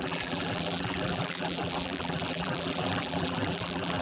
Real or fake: fake